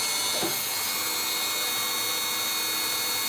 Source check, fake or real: real